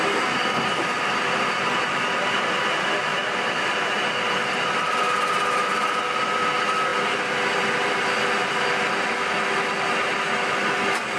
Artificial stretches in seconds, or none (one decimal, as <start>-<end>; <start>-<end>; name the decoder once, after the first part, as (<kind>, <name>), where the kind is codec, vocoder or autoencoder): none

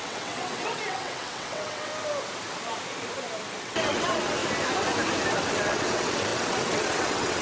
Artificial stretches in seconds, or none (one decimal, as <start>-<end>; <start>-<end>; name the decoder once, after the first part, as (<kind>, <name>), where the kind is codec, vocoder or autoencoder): 0.0-1.9 (vocoder, WaveNeXt); 3.6-4.4; 5.5-7.4

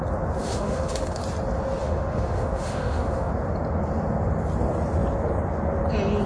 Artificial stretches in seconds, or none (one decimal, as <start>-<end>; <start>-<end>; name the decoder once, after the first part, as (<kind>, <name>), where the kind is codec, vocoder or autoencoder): 0.4-1.2 (autoencoder, DAC-VAE); 1.8-3.3